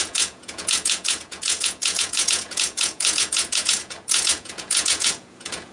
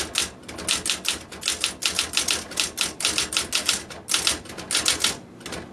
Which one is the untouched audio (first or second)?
second